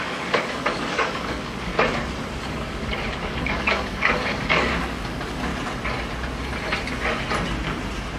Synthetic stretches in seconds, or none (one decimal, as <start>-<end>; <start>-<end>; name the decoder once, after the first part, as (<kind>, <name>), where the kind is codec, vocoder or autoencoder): 0.0-1.7 (codec, DAC); 2.4-5.5